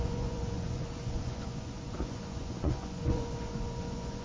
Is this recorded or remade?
remade